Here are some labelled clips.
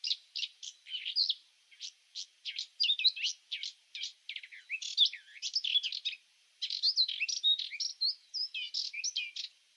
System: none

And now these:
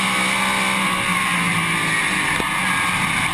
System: none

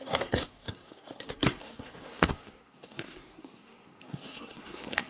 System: codec, SNAC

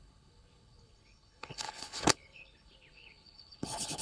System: codec, HILCodec